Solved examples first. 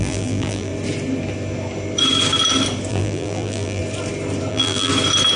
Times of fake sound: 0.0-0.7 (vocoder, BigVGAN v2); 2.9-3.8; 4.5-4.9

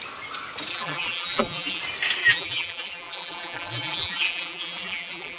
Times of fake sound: 0.7-1.8 (vocoder, BigVGAN v2); 2.2-5.4

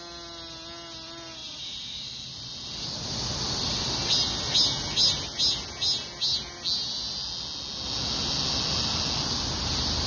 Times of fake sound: 1.4-2.4 (vocoder, BigVGAN v2)

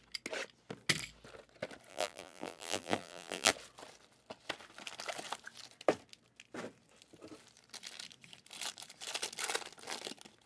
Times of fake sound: 1.9-3.5 (vocoder, BigVGAN v2)

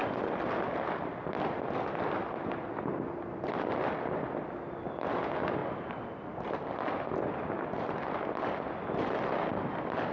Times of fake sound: 5.6-6.5 (vocoder, BigVGAN v2)

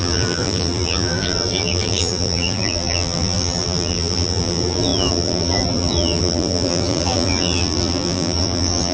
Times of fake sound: 0.0-8.9 (vocoder, BigVGAN v2)

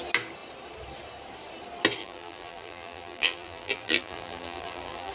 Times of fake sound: 2.0-5.1 (vocoder, BigVGAN v2)

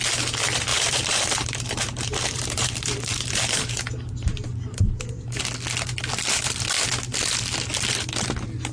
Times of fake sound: 0.7-5.4 (vocoder, BigVGAN v2)